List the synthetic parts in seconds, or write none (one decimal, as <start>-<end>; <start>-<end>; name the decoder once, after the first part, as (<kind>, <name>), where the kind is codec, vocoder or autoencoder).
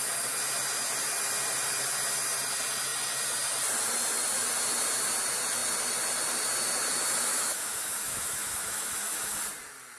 7.3-9.4 (autoencoder, DAC-VAE)